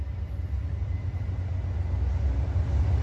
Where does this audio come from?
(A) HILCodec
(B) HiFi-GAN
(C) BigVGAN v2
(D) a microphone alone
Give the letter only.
D